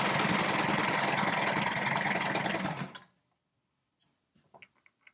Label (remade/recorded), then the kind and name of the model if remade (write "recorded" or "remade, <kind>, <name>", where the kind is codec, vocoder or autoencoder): recorded